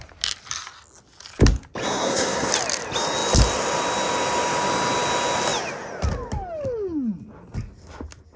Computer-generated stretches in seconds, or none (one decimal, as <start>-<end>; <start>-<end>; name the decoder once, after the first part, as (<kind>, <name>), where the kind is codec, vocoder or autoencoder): 1.8-2.5 (codec, SNAC)